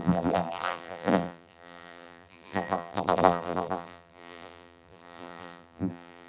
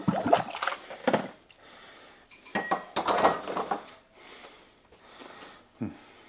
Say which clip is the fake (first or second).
first